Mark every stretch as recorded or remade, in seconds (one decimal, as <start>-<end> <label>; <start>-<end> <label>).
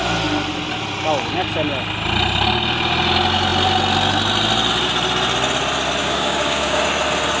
0.0-6.0 recorded; 6.0-6.8 remade; 6.8-7.4 recorded